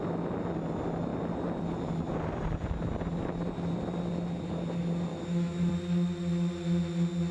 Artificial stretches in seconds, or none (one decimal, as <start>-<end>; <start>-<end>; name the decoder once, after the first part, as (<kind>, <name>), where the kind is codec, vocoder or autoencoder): 5.1-5.7 (autoencoder, DAC-VAE)